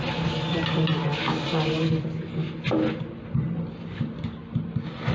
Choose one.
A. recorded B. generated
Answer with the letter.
A